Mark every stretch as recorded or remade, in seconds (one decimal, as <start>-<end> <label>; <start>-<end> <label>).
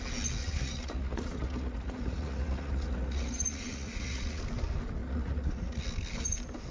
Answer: 0.0-0.4 recorded; 0.4-4.4 remade; 4.4-5.0 recorded; 5.0-5.8 remade; 5.8-6.7 recorded